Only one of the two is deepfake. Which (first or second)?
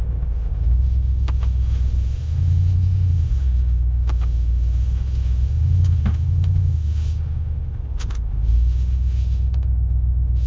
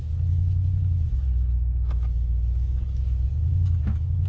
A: first